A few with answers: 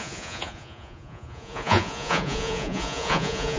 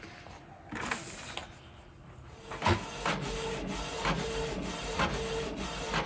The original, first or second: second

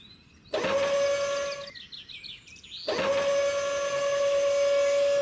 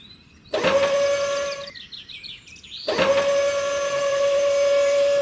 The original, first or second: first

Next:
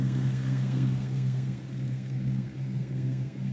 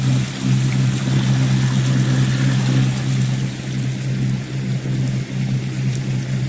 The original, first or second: second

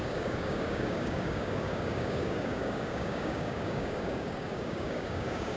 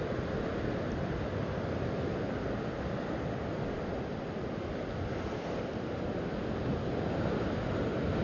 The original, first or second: second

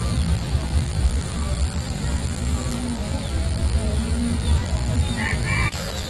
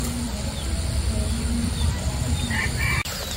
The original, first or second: second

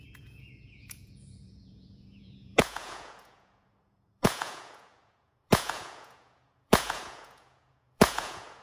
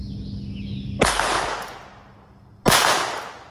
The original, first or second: second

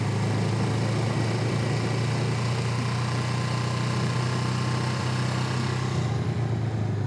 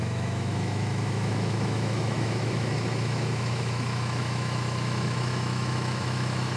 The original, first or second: first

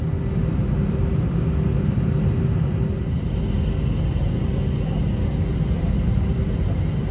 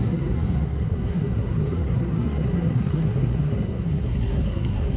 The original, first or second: first